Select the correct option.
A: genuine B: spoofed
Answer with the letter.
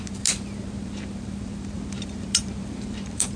B